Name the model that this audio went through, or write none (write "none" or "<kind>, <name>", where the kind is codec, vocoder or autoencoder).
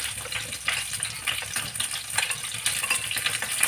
none